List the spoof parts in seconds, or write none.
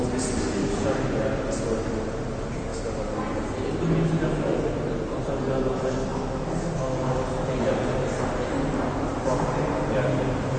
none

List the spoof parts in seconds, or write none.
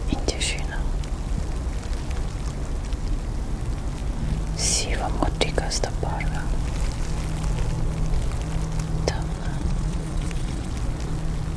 9.3-10.7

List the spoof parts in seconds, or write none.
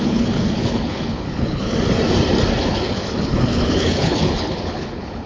0.0-1.7; 2.6-5.3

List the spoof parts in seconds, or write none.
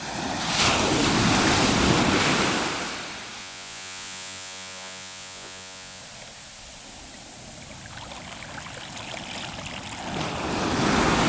3.4-6.0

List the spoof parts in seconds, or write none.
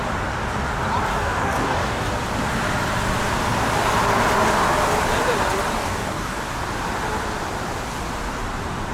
1.1-2.1; 5.8-6.4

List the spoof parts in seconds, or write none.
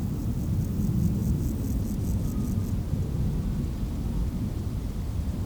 4.2-5.5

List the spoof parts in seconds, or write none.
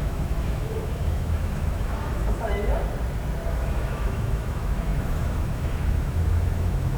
0.0-2.7; 3.5-7.0